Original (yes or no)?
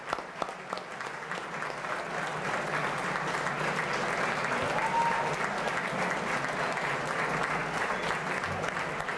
yes